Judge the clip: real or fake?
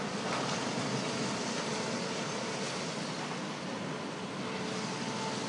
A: real